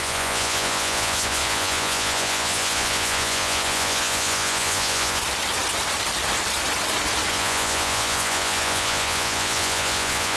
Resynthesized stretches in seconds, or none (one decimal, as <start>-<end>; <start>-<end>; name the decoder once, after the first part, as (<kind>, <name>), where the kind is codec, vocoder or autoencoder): 0.0-5.2 (vocoder, Vocos); 7.3-10.4